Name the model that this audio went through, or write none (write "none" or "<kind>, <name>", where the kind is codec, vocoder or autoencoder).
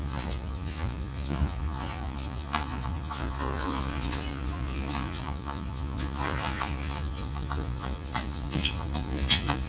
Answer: vocoder, Vocos